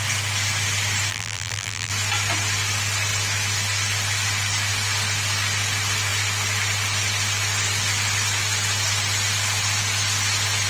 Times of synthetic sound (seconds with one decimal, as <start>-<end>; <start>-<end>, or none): 1.1-1.9